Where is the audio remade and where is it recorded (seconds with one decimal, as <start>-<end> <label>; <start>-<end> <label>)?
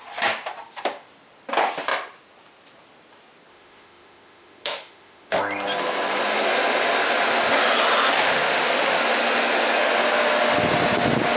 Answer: 0.0-3.5 recorded; 3.5-5.4 remade; 5.4-8.2 recorded; 8.2-9.0 remade; 9.0-11.4 recorded